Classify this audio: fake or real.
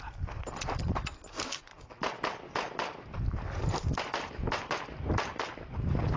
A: real